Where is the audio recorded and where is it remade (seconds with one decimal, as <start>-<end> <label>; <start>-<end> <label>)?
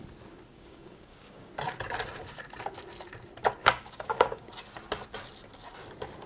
0.0-0.5 recorded; 0.5-1.5 remade; 1.5-3.6 recorded; 3.6-4.5 remade; 4.5-6.3 recorded